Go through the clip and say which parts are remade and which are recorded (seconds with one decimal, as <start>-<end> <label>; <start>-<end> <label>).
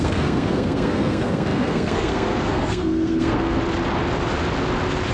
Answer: 0.0-3.6 remade; 3.6-5.1 recorded